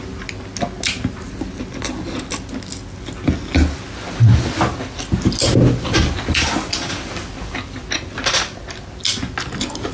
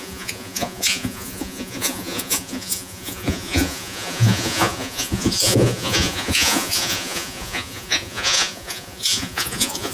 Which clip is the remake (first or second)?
second